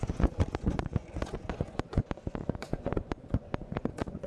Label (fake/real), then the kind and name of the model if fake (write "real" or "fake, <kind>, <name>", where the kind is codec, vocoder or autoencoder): fake, vocoder, Vocos